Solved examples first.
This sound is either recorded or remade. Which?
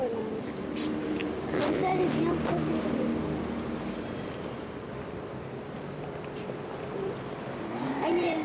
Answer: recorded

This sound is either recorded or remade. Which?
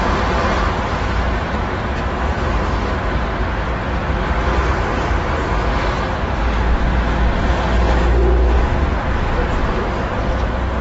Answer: recorded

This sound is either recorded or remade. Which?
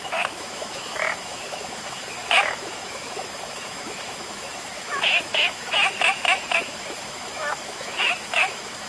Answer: remade